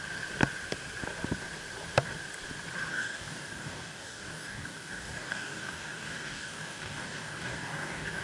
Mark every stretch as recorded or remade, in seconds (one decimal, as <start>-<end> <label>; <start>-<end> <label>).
0.0-2.9 recorded; 2.9-8.2 remade